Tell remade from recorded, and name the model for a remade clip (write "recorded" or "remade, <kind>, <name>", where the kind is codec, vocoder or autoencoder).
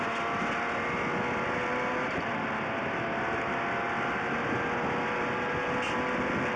recorded